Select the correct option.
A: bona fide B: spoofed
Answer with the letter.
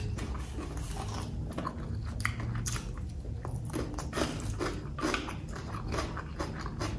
A